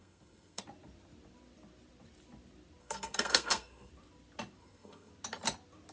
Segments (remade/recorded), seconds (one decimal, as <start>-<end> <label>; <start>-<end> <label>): 0.0-0.6 remade; 0.6-2.8 recorded; 2.8-3.9 remade; 3.9-4.6 recorded; 4.6-5.1 remade; 5.1-5.9 recorded